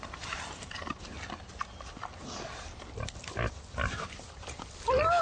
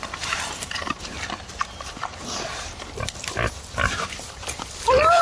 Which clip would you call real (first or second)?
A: first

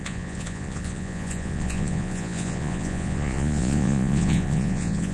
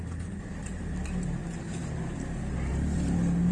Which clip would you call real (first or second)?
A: second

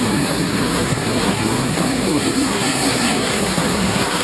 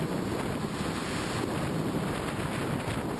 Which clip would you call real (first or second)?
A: second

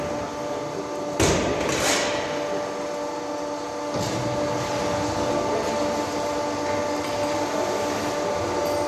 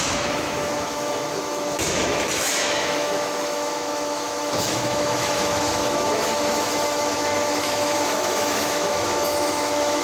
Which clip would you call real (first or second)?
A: first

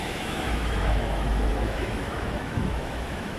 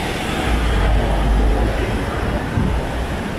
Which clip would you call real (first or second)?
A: second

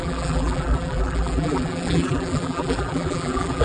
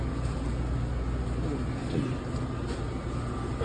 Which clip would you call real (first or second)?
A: second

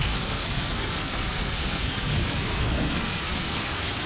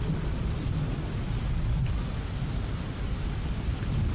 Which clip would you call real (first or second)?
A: second